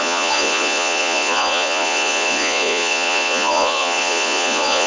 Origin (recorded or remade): remade